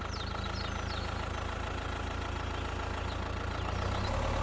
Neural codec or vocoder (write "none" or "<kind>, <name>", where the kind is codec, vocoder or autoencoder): none